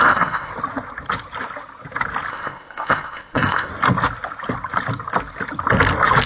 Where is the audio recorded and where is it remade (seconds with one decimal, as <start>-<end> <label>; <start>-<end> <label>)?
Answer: 0.0-0.5 remade; 0.5-2.3 recorded; 2.3-3.7 remade; 3.7-6.3 recorded